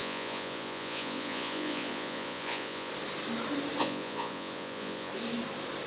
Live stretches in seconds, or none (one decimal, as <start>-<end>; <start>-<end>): 2.9-3.8; 5.1-5.9